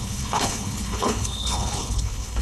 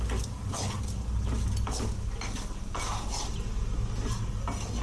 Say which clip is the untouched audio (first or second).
second